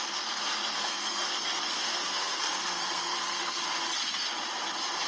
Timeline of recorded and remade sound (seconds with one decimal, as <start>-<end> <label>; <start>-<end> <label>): 0.0-0.5 recorded; 0.5-3.6 remade; 3.6-5.1 recorded